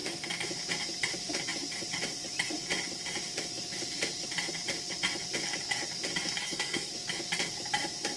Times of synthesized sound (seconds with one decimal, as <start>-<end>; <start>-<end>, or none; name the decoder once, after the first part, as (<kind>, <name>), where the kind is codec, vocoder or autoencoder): 6.4-6.9 (codec, SNAC)